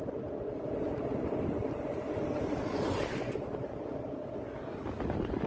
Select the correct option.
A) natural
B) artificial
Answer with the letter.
A